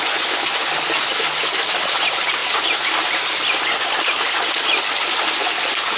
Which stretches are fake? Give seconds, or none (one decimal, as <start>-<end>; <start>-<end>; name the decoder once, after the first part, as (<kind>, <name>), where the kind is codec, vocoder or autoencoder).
none